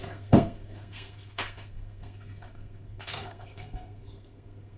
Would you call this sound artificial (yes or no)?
yes